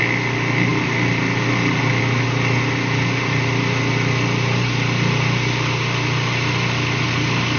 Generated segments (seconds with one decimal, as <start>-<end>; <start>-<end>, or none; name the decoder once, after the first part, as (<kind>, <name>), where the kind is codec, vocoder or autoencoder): none